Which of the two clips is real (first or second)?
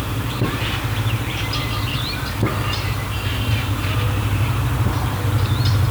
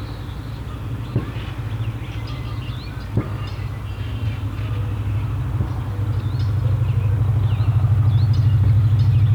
second